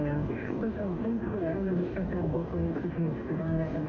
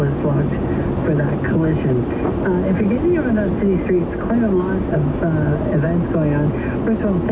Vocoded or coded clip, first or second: first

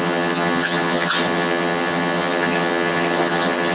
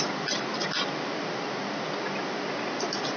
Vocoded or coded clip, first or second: first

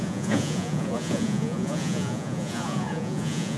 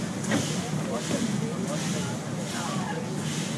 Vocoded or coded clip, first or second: first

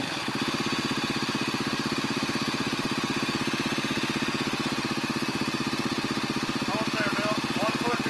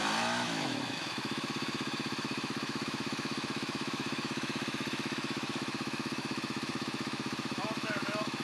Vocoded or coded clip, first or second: second